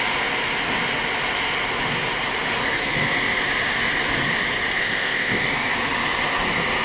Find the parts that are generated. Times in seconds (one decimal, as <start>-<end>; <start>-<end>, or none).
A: 4.8-5.4